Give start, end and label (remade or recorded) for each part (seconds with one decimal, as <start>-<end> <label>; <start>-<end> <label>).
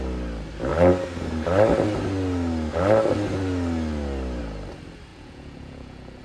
0.0-5.1 recorded; 5.1-6.2 remade